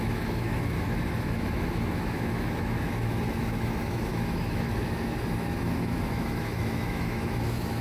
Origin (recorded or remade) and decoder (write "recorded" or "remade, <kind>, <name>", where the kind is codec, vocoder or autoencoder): remade, autoencoder, DAC-VAE